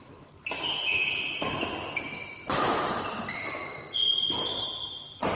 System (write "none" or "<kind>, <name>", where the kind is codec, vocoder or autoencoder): none